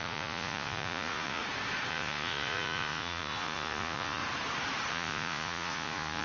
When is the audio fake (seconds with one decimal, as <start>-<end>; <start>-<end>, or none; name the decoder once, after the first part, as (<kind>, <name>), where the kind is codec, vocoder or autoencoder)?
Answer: 0.0-1.4 (vocoder, Vocos); 1.9-4.2; 4.9-6.2